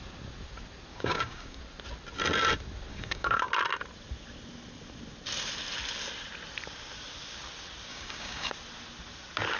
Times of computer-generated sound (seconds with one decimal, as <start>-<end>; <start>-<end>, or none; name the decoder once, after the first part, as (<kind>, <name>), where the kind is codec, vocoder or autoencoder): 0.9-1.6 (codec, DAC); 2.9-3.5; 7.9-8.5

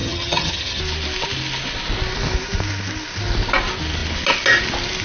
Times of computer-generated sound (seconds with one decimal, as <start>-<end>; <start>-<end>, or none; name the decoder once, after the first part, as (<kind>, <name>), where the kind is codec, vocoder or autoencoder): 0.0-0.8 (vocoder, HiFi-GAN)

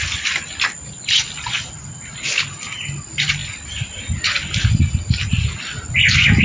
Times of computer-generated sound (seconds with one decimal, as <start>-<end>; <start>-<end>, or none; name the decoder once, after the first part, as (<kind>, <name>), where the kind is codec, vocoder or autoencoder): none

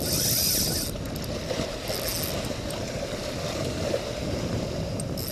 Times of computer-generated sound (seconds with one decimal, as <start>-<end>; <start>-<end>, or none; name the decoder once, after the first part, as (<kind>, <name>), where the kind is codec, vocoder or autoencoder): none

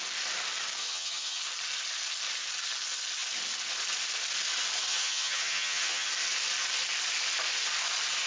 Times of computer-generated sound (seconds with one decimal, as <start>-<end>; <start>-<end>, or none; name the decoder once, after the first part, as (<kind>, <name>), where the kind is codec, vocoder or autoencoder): 0.8-1.4 (vocoder, HiFi-GAN); 4.9-6.1

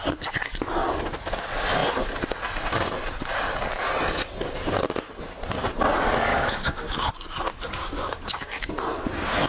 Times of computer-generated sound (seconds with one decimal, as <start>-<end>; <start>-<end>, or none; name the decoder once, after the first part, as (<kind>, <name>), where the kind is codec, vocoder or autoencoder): 6.3-7.1 (codec, DAC); 7.8-8.7

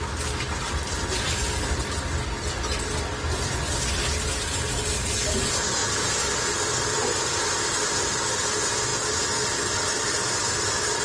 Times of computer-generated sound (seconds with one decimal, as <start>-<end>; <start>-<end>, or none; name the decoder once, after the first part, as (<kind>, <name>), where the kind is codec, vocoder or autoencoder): 5.8-8.4 (vocoder, BigVGAN v2)